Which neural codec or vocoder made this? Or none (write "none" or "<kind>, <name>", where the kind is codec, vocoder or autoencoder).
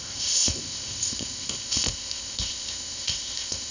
codec, ZipCodec